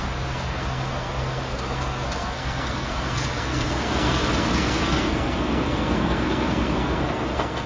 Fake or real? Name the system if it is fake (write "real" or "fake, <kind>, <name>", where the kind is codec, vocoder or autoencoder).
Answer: fake, codec, SNAC